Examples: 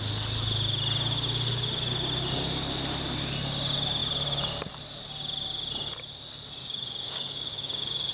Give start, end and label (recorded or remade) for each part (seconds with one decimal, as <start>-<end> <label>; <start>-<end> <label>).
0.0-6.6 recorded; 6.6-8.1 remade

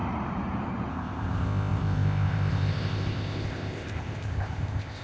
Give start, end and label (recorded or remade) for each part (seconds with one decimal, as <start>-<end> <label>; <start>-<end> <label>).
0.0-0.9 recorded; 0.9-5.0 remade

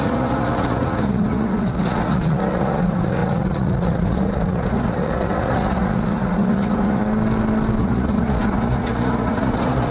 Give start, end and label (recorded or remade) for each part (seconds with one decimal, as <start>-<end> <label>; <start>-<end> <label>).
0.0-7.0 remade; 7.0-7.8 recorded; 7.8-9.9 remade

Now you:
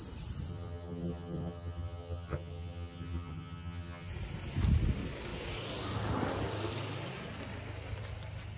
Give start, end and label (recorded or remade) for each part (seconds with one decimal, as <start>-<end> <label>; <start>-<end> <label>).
0.0-0.5 recorded; 0.5-4.1 remade; 4.1-8.6 recorded

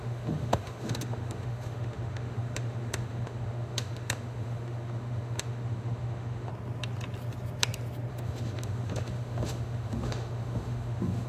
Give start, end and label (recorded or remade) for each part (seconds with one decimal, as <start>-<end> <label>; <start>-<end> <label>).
0.0-6.5 remade; 6.5-8.1 recorded; 8.1-11.3 remade

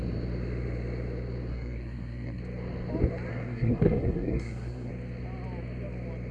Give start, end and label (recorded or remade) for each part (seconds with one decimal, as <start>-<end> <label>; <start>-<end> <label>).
0.0-1.5 recorded; 1.5-2.4 remade; 2.4-3.3 recorded; 3.3-4.9 remade; 4.9-6.3 recorded

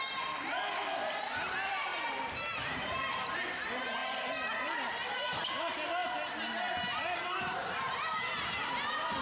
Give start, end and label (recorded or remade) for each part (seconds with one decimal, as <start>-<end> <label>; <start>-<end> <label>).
0.0-1.9 recorded; 1.9-3.4 remade; 3.4-6.0 recorded; 6.0-8.2 remade; 8.2-9.2 recorded